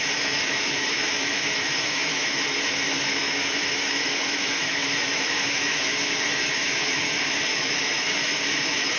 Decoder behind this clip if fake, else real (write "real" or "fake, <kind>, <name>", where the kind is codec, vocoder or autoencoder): fake, autoencoder, DAC-VAE